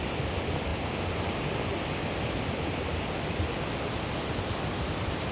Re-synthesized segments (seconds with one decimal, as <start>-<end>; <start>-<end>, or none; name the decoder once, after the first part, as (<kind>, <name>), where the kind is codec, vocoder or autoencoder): 0.7-1.3 (vocoder, BigVGAN v2)